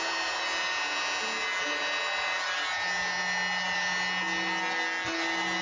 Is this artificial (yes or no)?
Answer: no